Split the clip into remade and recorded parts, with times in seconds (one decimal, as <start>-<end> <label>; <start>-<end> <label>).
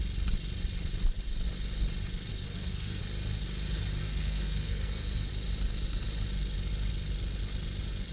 0.0-2.3 recorded; 2.3-3.0 remade; 3.0-4.0 recorded; 4.0-5.3 remade; 5.3-8.1 recorded